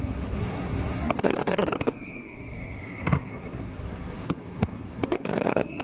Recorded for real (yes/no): no